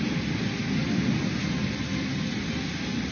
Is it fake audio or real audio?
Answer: real